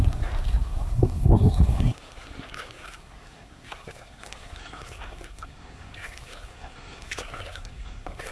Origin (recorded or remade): remade